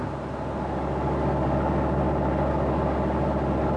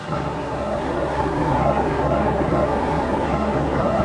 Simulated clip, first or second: second